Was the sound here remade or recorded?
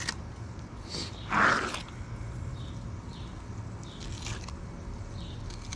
recorded